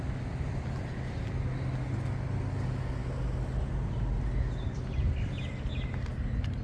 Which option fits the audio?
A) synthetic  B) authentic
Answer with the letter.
B